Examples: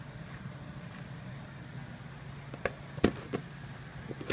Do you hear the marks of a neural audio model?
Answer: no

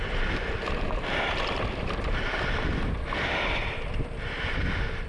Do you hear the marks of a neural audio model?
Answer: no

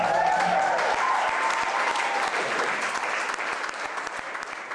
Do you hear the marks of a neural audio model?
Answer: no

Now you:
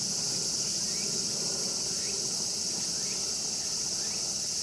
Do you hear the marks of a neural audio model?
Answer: no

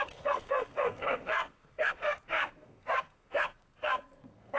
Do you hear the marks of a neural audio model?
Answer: yes